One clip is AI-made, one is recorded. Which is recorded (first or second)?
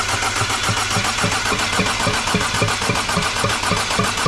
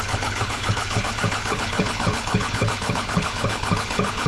first